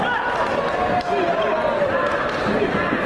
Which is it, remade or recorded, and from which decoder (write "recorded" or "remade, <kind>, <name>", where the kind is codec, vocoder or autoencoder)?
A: recorded